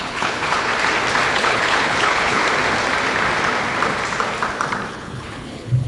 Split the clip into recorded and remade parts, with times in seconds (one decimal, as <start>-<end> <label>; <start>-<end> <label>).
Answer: 0.0-0.7 remade; 0.7-1.3 recorded; 1.3-2.4 remade; 2.4-4.9 recorded; 4.9-5.9 remade